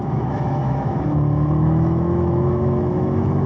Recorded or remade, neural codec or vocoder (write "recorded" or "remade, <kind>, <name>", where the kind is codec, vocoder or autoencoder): remade, autoencoder, DAC-VAE